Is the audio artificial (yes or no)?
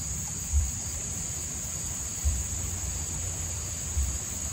yes